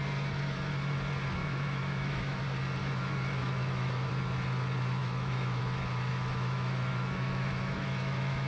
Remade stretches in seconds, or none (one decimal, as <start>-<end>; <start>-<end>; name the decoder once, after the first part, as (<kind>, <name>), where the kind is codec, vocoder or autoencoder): 1.4-2.4 (autoencoder, DAC-VAE); 2.8-4.1; 5.0-5.6; 6.1-8.5